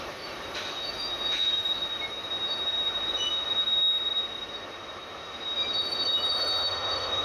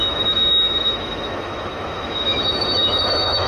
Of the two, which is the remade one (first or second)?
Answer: second